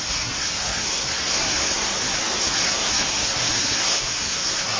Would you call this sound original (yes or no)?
no